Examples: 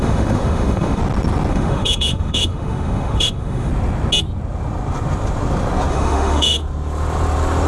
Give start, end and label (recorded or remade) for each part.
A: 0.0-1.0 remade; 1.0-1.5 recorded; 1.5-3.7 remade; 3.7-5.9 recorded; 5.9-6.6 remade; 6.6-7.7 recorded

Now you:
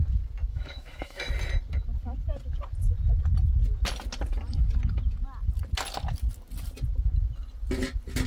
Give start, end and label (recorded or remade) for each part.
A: 0.0-0.5 recorded; 0.5-1.3 remade; 1.3-8.3 recorded

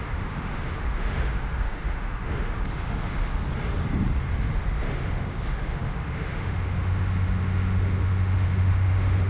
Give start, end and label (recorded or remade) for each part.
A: 0.0-3.4 remade; 3.4-4.3 recorded; 4.3-9.3 remade

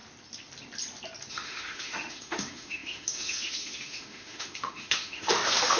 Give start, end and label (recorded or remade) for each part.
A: 0.0-1.3 recorded; 1.3-5.8 remade

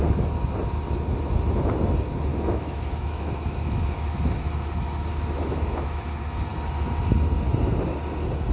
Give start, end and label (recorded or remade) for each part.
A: 0.0-2.3 recorded; 2.3-4.5 remade; 4.5-5.1 recorded; 5.1-6.0 remade; 6.0-8.5 recorded

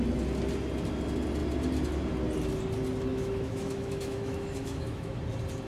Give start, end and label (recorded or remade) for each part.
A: 0.0-3.1 recorded; 3.1-5.2 remade; 5.2-5.7 recorded

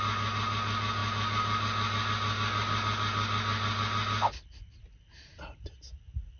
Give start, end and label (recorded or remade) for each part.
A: 0.0-6.4 recorded